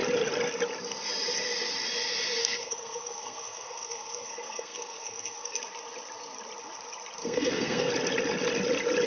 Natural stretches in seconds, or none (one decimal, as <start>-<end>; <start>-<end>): 0.0-2.4; 5.6-7.2; 7.9-9.1